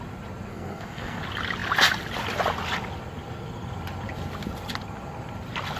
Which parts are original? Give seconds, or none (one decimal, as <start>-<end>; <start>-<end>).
0.0-0.5; 1.2-5.8